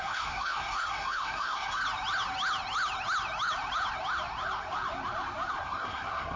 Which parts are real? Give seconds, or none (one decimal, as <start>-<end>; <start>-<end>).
1.8-5.6